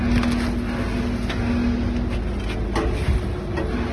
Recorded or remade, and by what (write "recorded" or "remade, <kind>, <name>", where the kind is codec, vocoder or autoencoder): recorded